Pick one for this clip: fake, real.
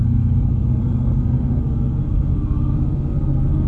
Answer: fake